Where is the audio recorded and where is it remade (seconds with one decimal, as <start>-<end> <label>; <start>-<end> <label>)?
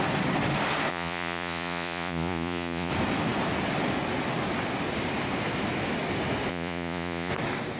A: 0.0-0.9 recorded; 0.9-2.9 remade; 2.9-6.5 recorded; 6.5-7.3 remade; 7.3-7.8 recorded